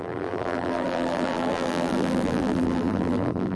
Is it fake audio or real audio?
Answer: fake